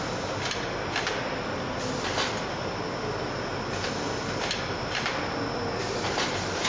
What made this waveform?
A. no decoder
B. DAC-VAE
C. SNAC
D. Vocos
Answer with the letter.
A